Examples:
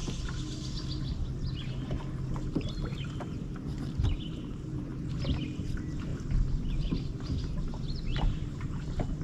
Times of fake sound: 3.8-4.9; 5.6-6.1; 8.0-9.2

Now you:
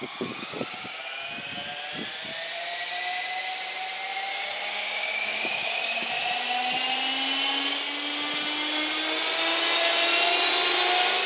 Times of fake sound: 0.0-1.0; 4.3-6.1

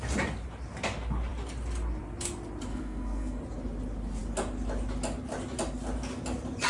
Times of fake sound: 2.7-3.4

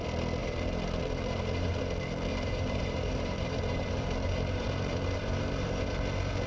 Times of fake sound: 0.4-1.8; 2.3-5.8

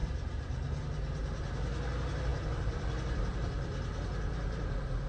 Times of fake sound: 0.0-0.8; 2.3-3.2

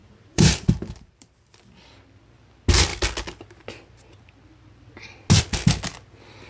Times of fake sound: 0.0-1.8

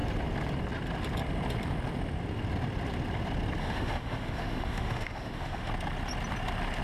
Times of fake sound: 3.6-5.7